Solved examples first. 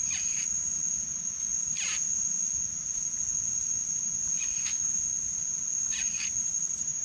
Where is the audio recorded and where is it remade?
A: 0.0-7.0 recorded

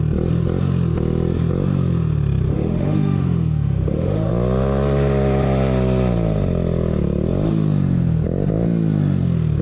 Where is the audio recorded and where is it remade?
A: 0.0-2.5 recorded; 2.5-4.3 remade; 4.3-9.6 recorded

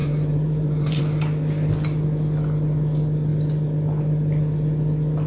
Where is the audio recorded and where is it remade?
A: 0.0-1.0 remade; 1.0-5.3 recorded

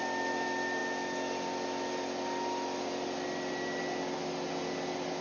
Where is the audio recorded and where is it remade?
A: 0.0-5.2 recorded

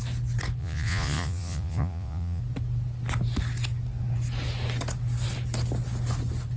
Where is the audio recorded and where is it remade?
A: 0.0-0.6 recorded; 0.6-2.4 remade; 2.4-6.6 recorded

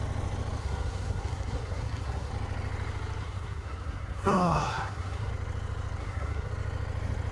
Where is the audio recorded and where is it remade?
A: 0.0-0.6 recorded; 0.6-2.3 remade; 2.3-3.2 recorded; 3.2-5.3 remade; 5.3-6.0 recorded; 6.0-6.5 remade; 6.5-7.3 recorded

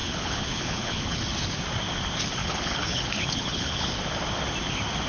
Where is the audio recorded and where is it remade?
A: 0.0-1.2 remade; 1.2-2.4 recorded; 2.4-3.9 remade; 3.9-5.1 recorded

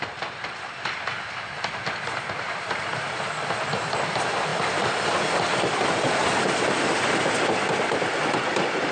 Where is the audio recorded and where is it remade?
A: 0.0-8.9 recorded